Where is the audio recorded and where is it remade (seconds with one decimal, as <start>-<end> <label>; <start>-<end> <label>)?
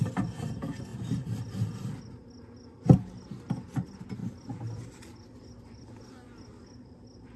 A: 0.0-0.9 recorded; 0.9-2.0 remade; 2.0-4.2 recorded; 4.2-5.9 remade; 5.9-7.4 recorded